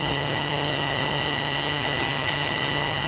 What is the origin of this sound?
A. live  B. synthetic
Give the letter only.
B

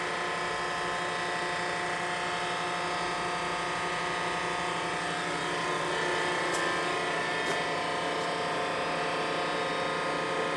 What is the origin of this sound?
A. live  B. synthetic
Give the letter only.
A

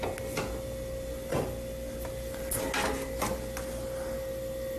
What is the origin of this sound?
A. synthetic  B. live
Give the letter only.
B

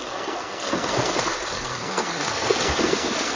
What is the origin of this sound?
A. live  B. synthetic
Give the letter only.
B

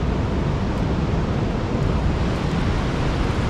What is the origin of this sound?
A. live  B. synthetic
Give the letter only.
A